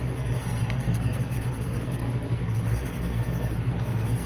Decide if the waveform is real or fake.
fake